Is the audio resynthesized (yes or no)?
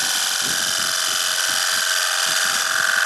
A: no